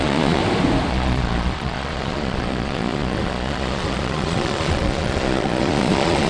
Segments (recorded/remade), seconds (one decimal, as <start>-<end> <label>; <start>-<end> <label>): 0.0-0.4 remade; 0.4-0.9 recorded; 0.9-6.3 remade